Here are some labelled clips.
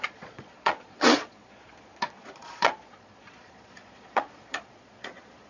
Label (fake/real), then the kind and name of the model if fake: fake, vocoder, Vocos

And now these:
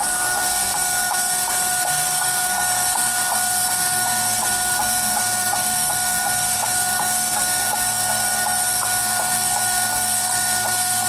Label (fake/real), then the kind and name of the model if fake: fake, codec, SNAC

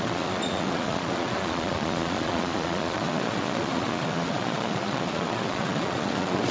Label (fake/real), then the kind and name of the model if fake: fake, vocoder, Vocos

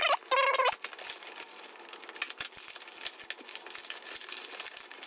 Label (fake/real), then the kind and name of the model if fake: real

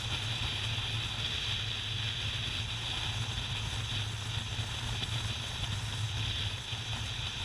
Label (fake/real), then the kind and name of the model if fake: real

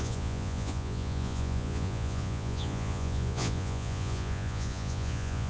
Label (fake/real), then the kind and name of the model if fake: fake, vocoder, Vocos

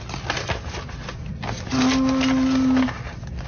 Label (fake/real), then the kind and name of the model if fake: real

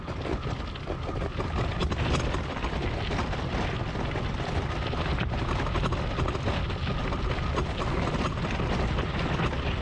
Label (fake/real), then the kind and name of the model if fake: real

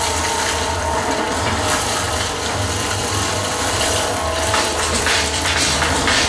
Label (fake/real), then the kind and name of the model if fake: fake, vocoder, BigVGAN v2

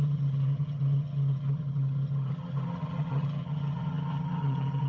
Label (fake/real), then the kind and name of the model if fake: fake, vocoder, HiFi-GAN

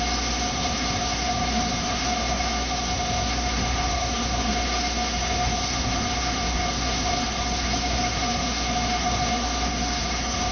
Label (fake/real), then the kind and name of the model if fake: fake, codec, SNAC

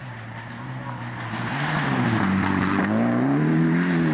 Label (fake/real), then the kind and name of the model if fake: real